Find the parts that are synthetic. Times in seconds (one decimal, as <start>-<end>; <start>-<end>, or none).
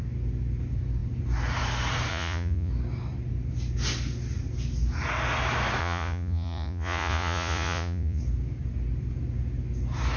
2.1-2.7; 5.8-8.2